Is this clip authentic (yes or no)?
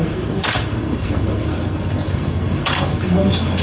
no